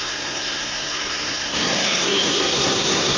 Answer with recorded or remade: remade